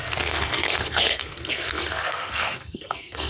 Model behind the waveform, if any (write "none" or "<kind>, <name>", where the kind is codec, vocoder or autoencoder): codec, SNAC